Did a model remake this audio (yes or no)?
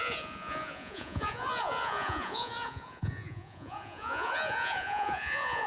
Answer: yes